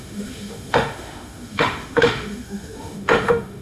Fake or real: fake